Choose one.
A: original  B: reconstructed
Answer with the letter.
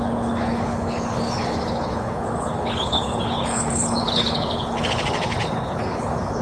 B